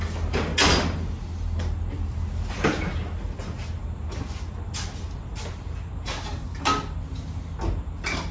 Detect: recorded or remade recorded